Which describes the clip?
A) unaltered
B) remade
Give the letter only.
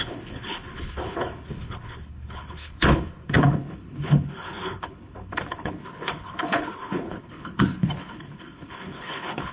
B